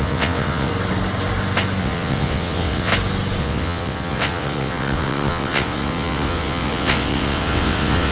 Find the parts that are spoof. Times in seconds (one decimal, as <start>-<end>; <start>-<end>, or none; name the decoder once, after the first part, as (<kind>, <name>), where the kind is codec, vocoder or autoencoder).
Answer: 0.0-0.7 (vocoder, WaveNeXt); 1.8-2.9; 3.4-8.1